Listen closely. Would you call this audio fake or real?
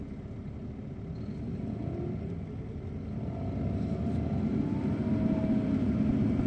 real